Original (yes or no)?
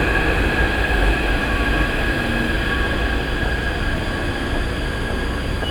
yes